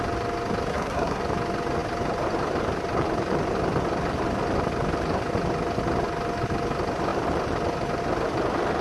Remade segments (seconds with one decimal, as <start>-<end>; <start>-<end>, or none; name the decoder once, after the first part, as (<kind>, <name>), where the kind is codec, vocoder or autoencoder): 0.7-1.2 (codec, SNAC)